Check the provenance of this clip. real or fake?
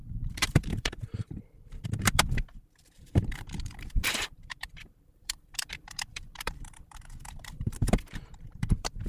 fake